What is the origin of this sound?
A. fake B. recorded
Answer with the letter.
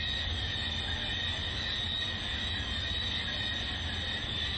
B